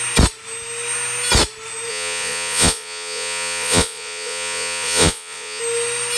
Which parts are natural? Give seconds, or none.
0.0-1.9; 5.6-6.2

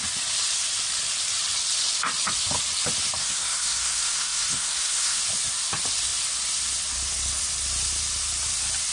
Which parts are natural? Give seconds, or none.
0.0-3.2; 5.2-8.9